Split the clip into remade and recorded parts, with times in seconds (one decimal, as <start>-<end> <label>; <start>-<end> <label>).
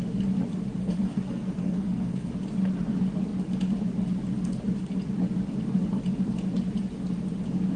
0.0-0.8 recorded; 0.8-2.3 remade; 2.3-7.8 recorded